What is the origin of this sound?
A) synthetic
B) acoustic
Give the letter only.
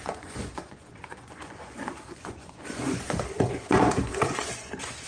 A